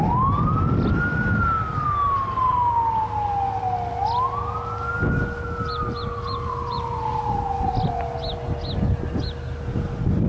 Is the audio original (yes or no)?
yes